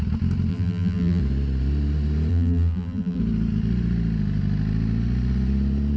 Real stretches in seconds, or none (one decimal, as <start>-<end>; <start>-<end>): 0.0-0.5; 1.2-2.3; 3.2-6.0